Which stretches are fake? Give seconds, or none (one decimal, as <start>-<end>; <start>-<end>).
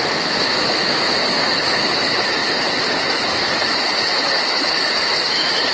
0.0-5.7